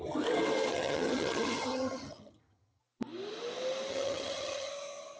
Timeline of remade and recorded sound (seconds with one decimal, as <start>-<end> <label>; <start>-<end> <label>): 0.0-0.7 recorded; 0.7-2.8 remade; 2.8-3.9 recorded; 3.9-4.7 remade; 4.7-5.2 recorded